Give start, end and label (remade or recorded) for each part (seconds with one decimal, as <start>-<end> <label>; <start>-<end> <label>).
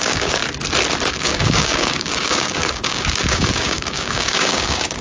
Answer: 0.0-0.4 remade; 0.4-1.1 recorded; 1.1-5.0 remade